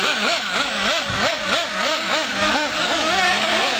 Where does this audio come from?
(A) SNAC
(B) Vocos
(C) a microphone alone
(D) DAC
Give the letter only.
D